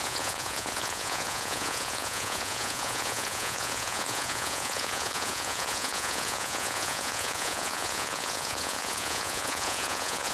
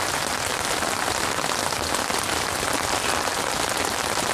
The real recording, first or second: second